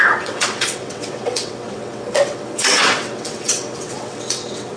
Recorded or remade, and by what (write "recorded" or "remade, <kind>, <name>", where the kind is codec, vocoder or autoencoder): remade, vocoder, WaveNeXt